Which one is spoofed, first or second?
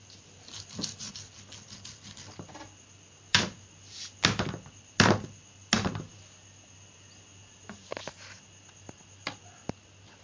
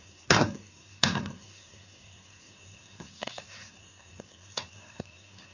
second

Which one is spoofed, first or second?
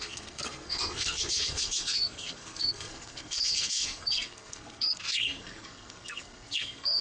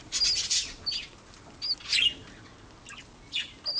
first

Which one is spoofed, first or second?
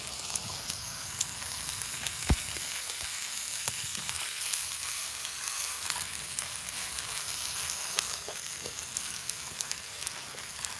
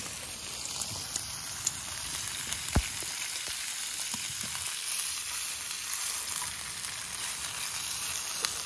first